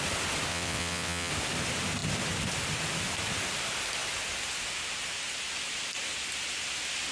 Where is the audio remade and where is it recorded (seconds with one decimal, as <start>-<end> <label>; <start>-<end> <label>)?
0.0-0.5 recorded; 0.5-1.3 remade; 1.3-7.1 recorded